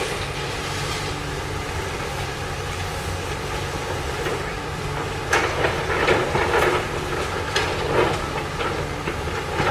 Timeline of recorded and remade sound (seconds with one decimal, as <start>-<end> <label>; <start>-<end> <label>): 0.0-3.8 recorded; 3.8-5.0 remade; 5.0-9.7 recorded